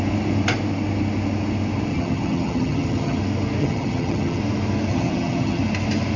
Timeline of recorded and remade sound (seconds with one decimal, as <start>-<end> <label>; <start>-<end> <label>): 0.0-1.9 recorded; 1.9-3.2 remade; 3.2-3.6 recorded; 3.6-4.4 remade; 4.4-4.9 recorded; 4.9-5.6 remade; 5.6-6.2 recorded